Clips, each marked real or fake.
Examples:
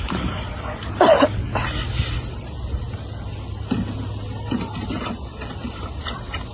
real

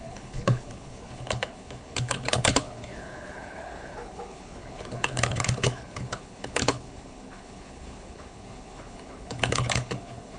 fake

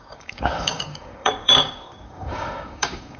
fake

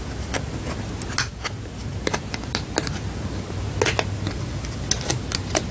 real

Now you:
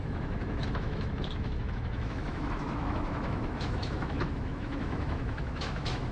fake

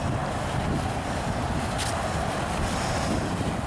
real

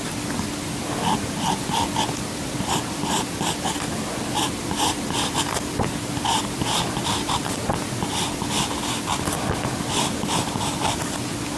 real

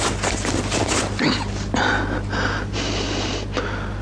real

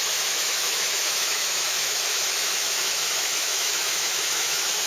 fake